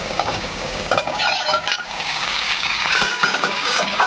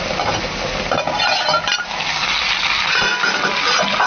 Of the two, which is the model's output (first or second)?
first